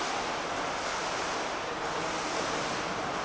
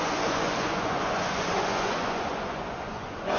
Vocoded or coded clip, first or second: second